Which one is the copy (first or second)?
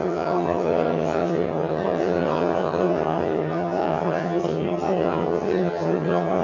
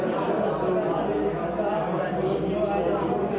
first